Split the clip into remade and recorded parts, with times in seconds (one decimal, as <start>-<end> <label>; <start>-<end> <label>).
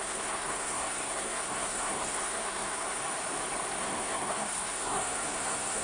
0.0-3.0 remade; 3.0-3.8 recorded; 3.8-5.8 remade